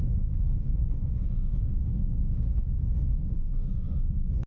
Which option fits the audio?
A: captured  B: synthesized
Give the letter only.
B